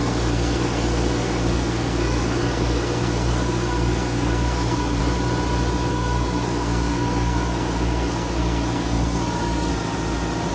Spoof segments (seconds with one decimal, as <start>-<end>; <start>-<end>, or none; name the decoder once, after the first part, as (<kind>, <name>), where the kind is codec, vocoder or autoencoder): 0.0-5.0 (codec, SNAC); 5.9-9.7